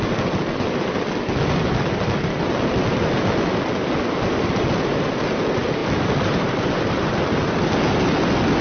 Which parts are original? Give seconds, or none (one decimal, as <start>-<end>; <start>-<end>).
0.0-8.6